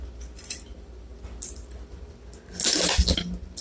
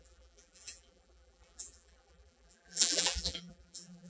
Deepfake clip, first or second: second